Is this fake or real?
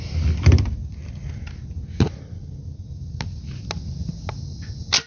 real